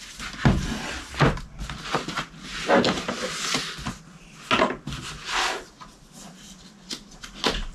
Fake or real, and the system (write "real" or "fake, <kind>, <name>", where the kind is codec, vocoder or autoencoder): real